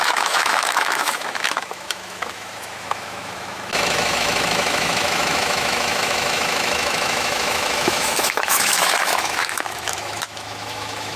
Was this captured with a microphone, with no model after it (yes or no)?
no